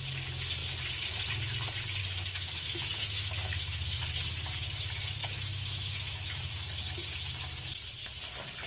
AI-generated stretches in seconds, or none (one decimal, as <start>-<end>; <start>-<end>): 2.0-4.0; 5.2-6.5